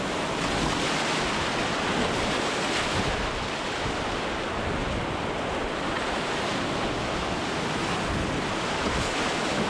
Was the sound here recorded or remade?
recorded